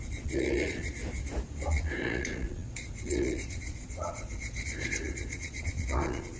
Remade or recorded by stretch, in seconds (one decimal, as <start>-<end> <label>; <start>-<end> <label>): 0.0-1.0 remade; 1.0-1.7 recorded; 1.7-6.4 remade